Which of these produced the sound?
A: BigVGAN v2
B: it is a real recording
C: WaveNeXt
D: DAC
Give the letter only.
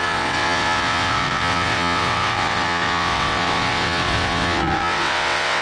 C